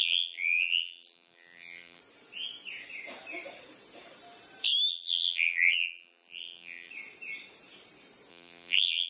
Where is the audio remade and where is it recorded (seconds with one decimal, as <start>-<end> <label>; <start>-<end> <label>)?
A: 0.0-2.0 remade; 2.0-4.9 recorded; 4.9-6.9 remade; 6.9-8.3 recorded; 8.3-9.1 remade